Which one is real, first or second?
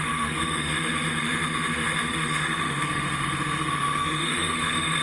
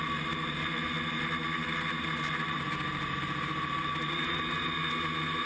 second